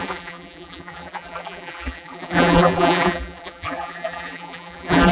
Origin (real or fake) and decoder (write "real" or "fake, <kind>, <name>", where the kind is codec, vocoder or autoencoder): fake, vocoder, BigVGAN v2